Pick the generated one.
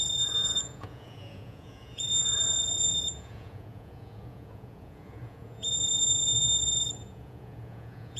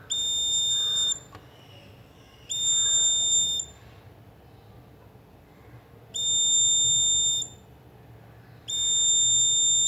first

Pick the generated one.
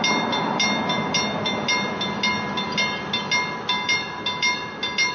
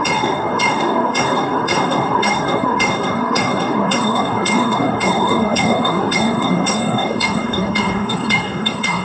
second